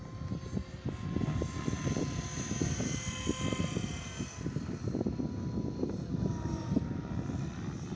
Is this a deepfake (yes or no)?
no